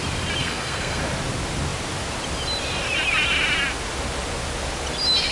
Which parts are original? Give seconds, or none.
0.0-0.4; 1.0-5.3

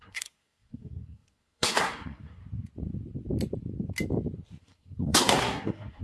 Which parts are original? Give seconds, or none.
2.4-4.6

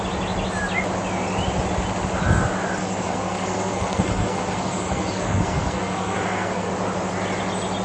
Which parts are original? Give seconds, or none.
0.0-2.8; 6.7-7.8

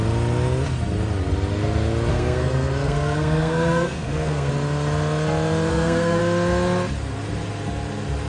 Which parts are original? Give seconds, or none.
0.0-2.1; 4.5-5.7; 6.2-8.3

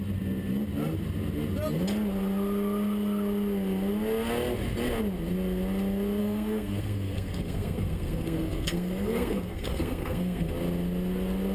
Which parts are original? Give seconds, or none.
0.0-6.2; 10.5-11.5